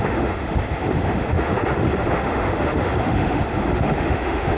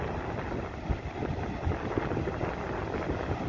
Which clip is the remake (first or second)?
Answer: first